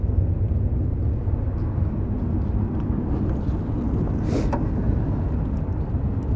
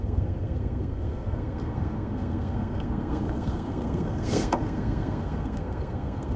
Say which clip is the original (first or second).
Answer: first